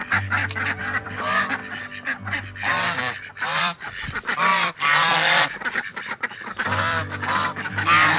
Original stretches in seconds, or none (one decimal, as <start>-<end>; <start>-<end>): 1.6-3.0